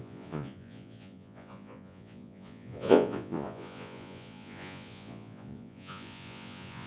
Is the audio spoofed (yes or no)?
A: yes